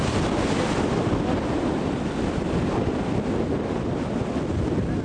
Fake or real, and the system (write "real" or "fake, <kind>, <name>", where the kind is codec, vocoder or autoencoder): real